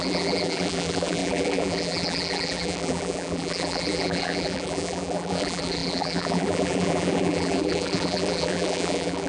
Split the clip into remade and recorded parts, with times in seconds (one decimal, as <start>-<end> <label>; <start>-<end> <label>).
0.0-9.3 remade